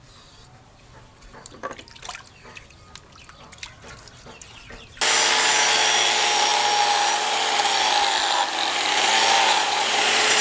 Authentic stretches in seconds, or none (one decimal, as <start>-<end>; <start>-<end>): 0.0-9.5